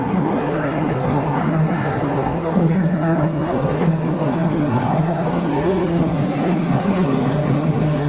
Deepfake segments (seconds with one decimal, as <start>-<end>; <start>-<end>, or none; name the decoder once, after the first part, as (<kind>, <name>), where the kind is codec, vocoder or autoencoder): 0.0-8.1 (codec, SNAC)